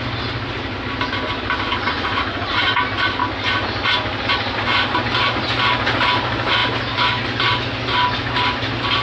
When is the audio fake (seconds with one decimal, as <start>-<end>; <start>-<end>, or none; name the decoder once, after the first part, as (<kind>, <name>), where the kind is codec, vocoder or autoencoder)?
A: 1.7-2.8 (vocoder, Vocos)